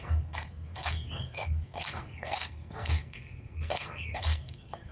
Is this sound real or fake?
fake